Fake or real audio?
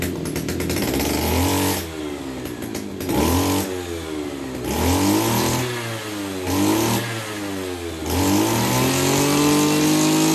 real